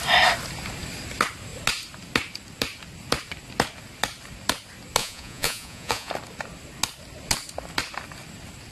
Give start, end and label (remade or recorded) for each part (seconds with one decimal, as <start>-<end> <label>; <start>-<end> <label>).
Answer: 0.0-5.0 recorded; 5.0-6.1 remade; 6.1-8.7 recorded